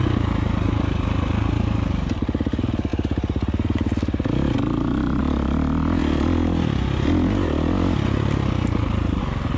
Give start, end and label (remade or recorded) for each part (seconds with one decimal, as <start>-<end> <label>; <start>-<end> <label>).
0.0-2.9 recorded; 2.9-5.2 remade; 5.2-9.6 recorded